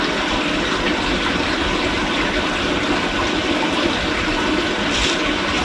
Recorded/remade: recorded